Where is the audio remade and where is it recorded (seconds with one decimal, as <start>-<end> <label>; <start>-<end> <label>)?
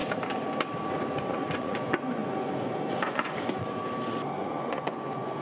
0.0-1.1 recorded; 1.1-3.8 remade; 3.8-4.4 recorded; 4.4-5.4 remade